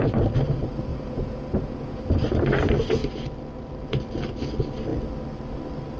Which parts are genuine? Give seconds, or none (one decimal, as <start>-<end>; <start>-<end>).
0.0-0.9; 2.0-6.0